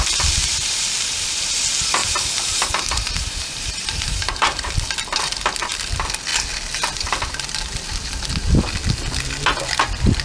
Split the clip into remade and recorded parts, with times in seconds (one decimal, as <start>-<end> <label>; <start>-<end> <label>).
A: 0.0-0.4 recorded; 0.4-1.5 remade; 1.5-2.0 recorded; 2.0-4.7 remade; 4.7-10.2 recorded